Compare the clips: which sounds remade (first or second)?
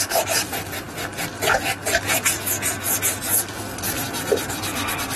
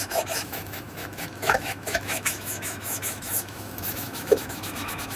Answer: second